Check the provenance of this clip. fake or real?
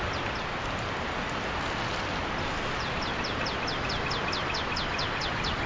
real